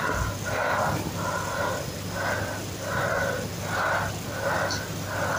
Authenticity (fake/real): real